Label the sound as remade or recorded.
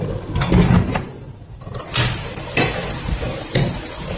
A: recorded